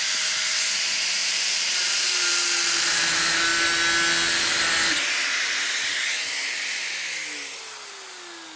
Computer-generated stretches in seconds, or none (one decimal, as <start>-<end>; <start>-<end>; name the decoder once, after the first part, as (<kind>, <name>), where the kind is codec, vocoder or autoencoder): 1.2-2.3 (vocoder, BigVGAN v2)